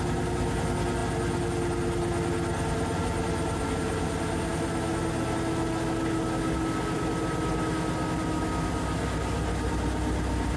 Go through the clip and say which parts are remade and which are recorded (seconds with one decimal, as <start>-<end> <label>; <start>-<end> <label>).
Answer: 0.0-10.6 recorded